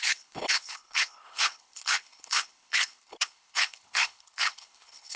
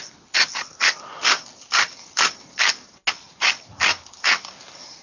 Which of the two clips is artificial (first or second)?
first